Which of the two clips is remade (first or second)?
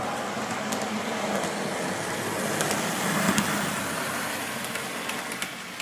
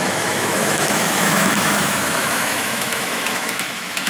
second